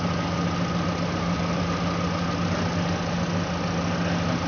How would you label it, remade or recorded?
recorded